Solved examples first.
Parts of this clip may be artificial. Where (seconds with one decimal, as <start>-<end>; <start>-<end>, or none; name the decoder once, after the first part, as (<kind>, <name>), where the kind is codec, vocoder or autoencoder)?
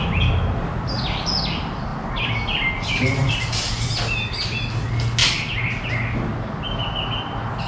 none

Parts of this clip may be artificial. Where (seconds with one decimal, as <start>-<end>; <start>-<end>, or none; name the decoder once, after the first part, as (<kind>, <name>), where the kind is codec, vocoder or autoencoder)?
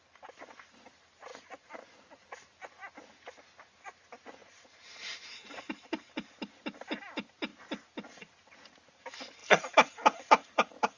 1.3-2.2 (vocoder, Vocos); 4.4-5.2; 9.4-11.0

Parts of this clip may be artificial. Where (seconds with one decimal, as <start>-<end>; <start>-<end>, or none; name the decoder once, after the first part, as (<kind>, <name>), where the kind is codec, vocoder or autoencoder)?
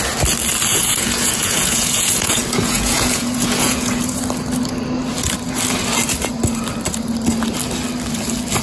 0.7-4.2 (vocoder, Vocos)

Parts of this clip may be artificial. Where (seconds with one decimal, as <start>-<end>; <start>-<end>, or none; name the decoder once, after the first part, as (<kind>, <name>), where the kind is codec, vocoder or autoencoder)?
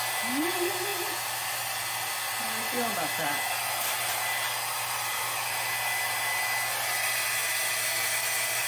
none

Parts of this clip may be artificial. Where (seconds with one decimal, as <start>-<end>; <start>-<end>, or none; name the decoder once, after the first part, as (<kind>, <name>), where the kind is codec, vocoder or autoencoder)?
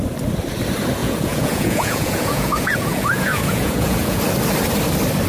1.0-4.2 (vocoder, Vocos)